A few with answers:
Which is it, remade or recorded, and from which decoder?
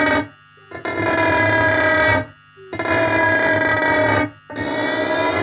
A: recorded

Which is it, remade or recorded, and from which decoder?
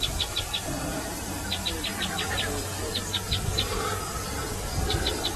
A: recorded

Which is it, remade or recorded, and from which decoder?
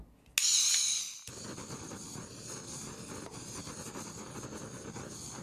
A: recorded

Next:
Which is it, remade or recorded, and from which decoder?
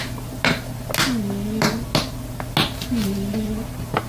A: recorded